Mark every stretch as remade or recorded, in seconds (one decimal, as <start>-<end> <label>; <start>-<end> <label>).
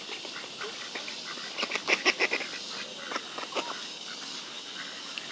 0.0-3.9 recorded; 3.9-5.3 remade